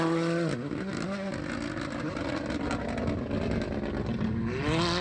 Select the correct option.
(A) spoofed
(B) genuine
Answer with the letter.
B